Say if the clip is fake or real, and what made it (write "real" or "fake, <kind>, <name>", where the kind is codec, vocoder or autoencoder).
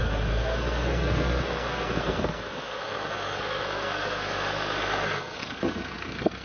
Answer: fake, codec, SNAC